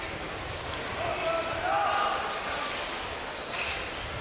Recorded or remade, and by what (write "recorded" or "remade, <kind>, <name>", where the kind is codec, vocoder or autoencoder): recorded